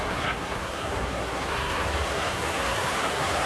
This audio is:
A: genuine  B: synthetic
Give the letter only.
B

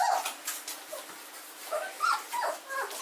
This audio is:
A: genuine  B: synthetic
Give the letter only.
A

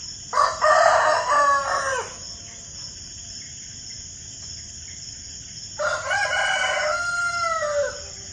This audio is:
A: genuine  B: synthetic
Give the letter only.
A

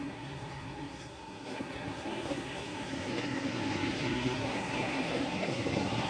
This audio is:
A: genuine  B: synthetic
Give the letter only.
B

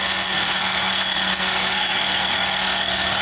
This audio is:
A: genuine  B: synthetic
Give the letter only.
B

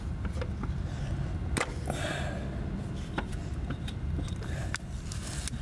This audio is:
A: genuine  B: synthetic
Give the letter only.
A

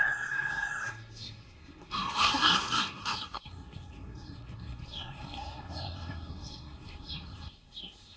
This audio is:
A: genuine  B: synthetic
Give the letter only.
B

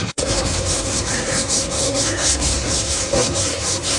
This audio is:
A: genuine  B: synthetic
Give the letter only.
B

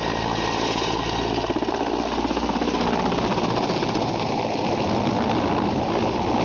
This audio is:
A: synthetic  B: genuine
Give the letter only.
B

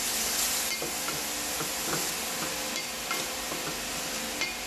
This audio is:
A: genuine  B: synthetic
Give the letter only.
A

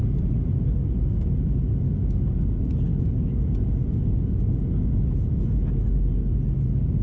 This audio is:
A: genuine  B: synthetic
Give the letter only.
A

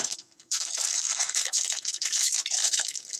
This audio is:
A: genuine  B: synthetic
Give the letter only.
B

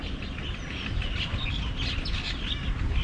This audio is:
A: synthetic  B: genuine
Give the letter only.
B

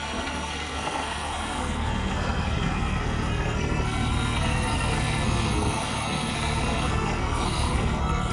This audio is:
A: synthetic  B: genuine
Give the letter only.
A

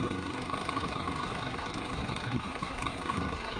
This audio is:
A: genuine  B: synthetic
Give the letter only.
B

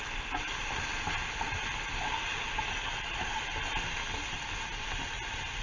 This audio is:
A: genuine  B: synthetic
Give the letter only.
A